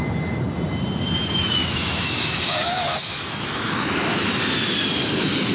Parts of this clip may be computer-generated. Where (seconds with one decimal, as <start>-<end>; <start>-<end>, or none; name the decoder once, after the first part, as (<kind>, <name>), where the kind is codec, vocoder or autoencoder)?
1.2-4.2 (autoencoder, DAC-VAE)